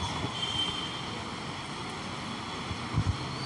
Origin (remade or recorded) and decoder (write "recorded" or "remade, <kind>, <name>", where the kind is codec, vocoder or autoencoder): recorded